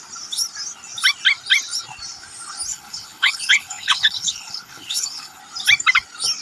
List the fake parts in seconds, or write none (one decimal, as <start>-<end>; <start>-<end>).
2.7-5.4